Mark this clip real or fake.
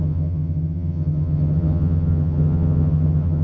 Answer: fake